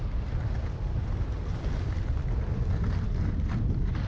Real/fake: real